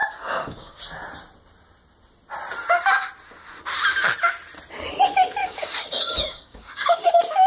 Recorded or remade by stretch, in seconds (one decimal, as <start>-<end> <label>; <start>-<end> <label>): 0.0-0.8 remade; 0.8-5.4 recorded; 5.4-7.1 remade; 7.1-7.5 recorded